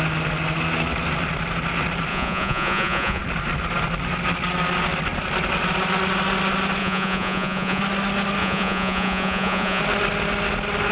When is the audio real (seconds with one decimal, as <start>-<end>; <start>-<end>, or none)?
0.0-2.1; 3.2-6.8; 7.8-8.4; 9.8-10.9